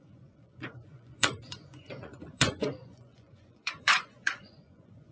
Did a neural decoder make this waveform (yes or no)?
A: yes